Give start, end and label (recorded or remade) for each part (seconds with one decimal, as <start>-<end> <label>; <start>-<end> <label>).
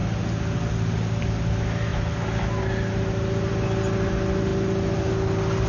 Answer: 0.0-5.7 recorded